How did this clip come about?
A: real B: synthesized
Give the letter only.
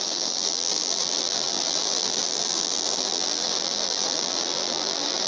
B